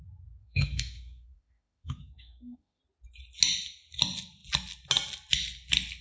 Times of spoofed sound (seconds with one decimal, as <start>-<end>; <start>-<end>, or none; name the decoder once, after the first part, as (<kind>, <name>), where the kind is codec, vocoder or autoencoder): 0.4-2.8 (autoencoder, DAC-VAE)